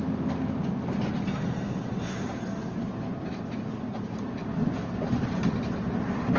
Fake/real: real